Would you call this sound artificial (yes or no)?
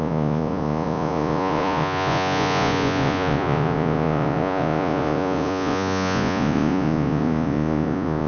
yes